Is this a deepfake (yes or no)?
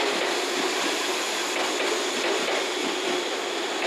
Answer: no